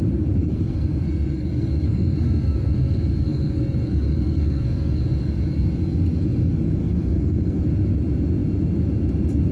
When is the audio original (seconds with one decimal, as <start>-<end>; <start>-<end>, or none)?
0.0-0.4; 5.0-6.8; 7.6-9.5